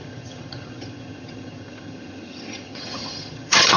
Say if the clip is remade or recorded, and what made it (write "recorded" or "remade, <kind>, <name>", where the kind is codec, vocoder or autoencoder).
remade, vocoder, HiFi-GAN